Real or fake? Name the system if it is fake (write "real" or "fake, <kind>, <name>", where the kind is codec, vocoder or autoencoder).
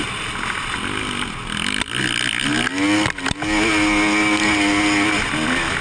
real